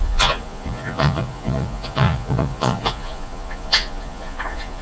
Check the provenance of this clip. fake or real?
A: fake